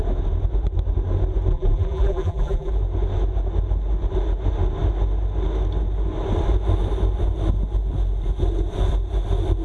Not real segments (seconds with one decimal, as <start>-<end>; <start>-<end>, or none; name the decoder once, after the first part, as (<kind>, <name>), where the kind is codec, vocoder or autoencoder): 1.5-2.7 (vocoder, BigVGAN v2)